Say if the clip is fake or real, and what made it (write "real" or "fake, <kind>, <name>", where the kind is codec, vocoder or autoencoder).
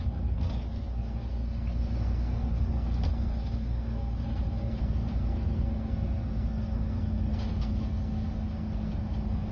fake, codec, SNAC